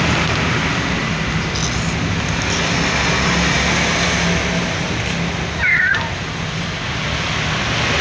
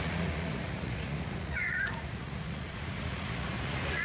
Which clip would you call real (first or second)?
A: first